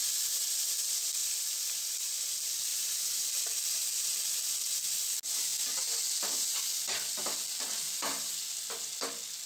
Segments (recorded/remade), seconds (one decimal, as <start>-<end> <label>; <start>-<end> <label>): 0.0-9.5 recorded

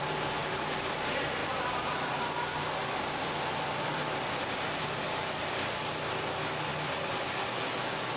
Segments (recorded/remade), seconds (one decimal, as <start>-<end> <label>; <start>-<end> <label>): 0.0-8.2 remade

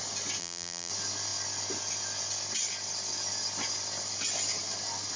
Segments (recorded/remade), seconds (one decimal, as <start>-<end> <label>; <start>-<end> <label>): 0.0-0.4 recorded; 0.4-0.9 remade; 0.9-5.2 recorded

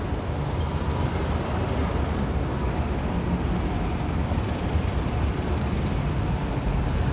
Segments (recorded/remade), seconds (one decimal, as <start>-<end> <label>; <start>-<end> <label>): 0.0-1.8 recorded; 1.8-5.8 remade; 5.8-7.1 recorded

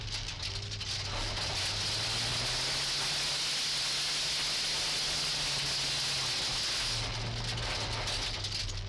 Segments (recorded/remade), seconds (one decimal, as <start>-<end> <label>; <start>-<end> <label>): 0.0-8.9 recorded

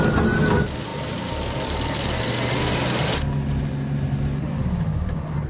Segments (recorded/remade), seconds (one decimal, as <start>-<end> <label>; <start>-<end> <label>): 0.0-5.5 recorded

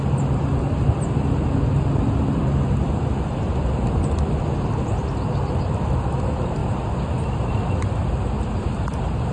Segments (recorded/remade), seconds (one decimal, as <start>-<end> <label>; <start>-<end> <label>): 0.0-9.3 recorded